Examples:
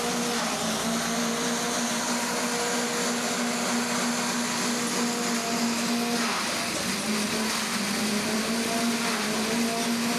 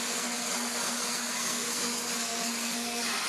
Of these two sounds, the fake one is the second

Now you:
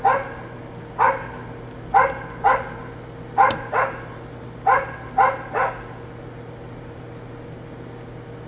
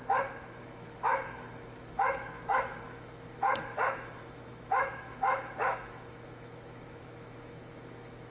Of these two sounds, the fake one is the second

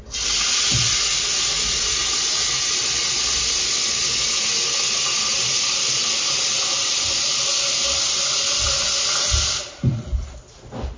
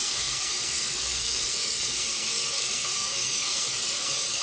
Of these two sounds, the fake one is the second